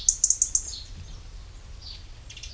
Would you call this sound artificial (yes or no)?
no